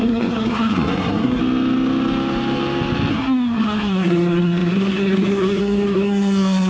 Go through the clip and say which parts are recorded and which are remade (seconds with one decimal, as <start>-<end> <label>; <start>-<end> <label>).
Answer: 0.0-1.4 remade; 1.4-3.1 recorded; 3.1-6.7 remade